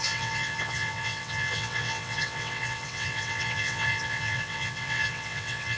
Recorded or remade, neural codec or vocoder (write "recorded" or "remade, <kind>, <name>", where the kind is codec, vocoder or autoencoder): remade, vocoder, WaveNeXt